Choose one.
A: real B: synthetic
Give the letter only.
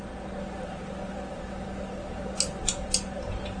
A